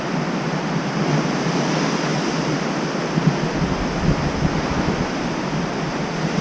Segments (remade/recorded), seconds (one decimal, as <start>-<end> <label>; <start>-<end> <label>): 0.0-6.4 recorded